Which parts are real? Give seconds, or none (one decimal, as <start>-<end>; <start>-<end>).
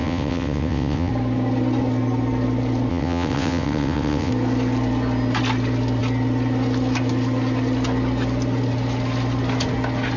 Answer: 1.1-2.9; 4.3-10.2